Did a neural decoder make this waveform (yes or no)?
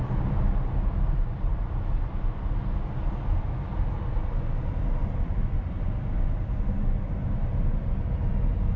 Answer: no